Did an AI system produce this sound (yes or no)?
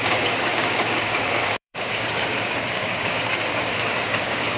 yes